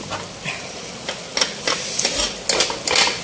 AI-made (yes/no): no